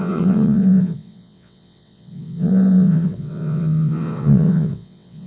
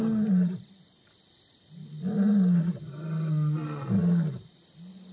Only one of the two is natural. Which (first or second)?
second